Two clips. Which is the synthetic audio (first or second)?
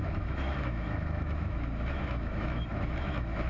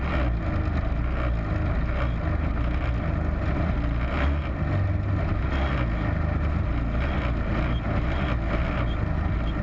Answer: first